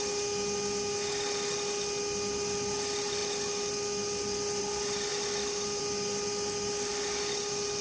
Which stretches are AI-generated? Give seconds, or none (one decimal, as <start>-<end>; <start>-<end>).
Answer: none